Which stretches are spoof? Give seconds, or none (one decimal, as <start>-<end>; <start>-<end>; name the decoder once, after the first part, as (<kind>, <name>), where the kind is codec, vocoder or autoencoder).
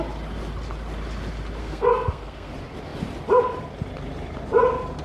1.6-2.5 (codec, SNAC)